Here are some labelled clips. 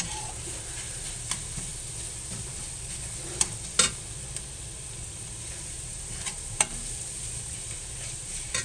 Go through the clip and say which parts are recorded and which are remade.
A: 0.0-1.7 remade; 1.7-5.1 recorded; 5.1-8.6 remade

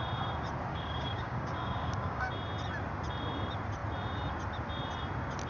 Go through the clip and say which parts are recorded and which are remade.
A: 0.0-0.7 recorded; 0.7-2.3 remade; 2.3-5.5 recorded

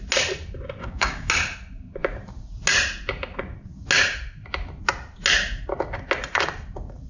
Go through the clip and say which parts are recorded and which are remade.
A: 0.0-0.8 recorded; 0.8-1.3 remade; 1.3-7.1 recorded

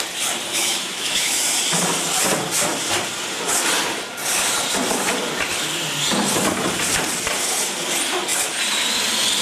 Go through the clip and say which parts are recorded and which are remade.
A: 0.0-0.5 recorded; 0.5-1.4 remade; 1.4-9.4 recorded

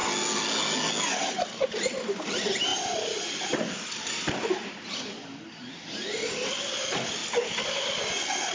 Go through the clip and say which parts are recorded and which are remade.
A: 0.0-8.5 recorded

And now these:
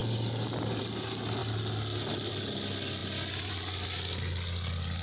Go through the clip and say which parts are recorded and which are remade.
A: 0.0-5.0 recorded